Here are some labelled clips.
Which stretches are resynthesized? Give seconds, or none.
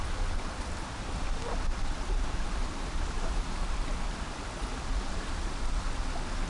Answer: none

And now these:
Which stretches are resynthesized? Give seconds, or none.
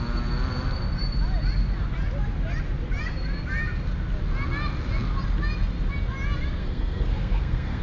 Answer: 6.6-7.8 (codec, SNAC)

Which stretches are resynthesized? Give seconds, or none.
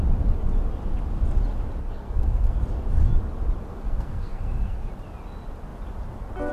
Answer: 1.8-2.6 (codec, SNAC); 3.7-4.9